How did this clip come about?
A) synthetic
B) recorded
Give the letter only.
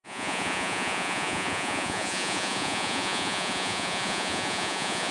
A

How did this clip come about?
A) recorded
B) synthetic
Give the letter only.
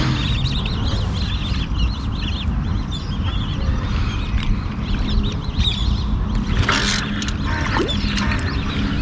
A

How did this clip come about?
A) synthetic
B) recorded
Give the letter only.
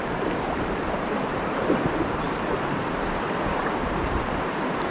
A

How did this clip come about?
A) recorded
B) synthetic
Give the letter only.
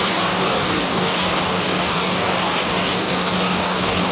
B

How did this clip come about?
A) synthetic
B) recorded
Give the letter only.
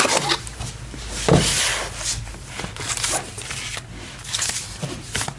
B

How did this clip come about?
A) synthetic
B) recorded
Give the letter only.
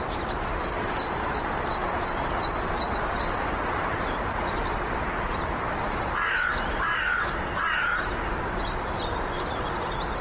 A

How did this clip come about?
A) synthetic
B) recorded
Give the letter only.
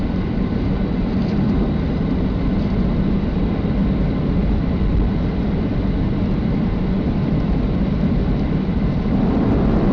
A